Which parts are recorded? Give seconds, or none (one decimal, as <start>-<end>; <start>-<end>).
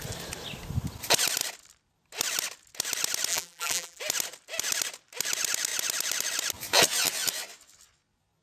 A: 0.0-3.3; 4.0-8.4